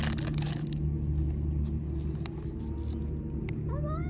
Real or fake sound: real